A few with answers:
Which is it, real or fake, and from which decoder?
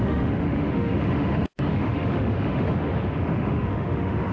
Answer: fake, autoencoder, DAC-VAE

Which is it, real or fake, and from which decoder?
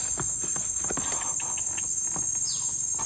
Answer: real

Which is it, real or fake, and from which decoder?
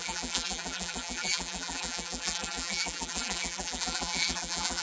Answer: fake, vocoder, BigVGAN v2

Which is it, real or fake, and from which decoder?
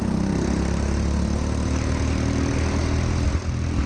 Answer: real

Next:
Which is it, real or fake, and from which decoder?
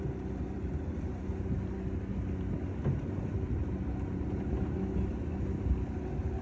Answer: real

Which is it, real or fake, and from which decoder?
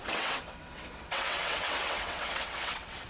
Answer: fake, vocoder, WaveNeXt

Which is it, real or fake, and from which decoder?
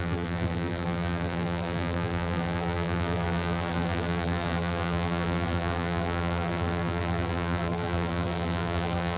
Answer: fake, vocoder, BigVGAN v2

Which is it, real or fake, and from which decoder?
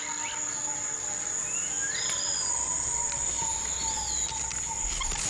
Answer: real